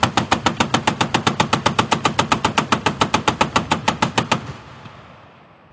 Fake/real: real